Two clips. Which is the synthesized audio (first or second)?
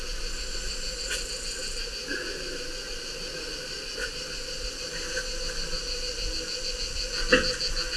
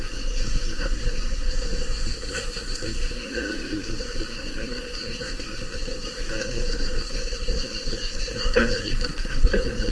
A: second